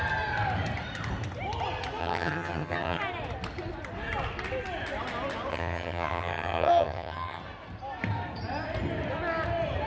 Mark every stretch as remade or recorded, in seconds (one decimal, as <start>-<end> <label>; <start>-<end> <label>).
0.0-2.0 recorded; 2.0-3.0 remade; 3.0-5.5 recorded; 5.5-7.4 remade; 7.4-9.9 recorded

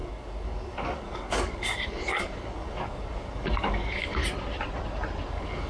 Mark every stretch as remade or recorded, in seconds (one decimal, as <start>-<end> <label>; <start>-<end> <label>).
0.0-4.2 remade; 4.2-5.3 recorded; 5.3-5.7 remade

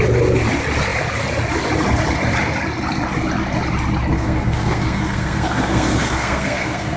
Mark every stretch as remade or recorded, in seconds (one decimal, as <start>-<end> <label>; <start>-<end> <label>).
0.0-4.1 recorded; 4.1-7.0 remade

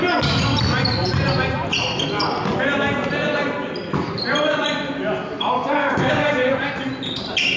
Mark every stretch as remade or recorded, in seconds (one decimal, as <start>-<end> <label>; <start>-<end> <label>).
0.0-5.8 recorded; 5.8-6.3 remade; 6.3-7.6 recorded